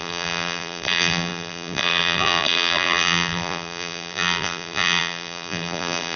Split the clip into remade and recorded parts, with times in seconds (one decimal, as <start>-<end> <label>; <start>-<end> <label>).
0.0-6.2 remade